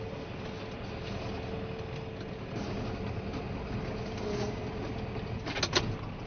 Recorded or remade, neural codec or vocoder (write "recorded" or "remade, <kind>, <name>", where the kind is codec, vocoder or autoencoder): recorded